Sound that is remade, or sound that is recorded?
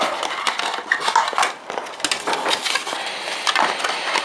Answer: recorded